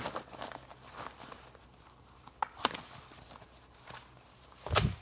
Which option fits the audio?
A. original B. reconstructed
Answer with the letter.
A